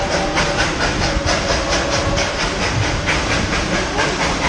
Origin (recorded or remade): remade